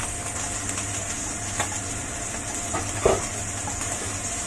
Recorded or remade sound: recorded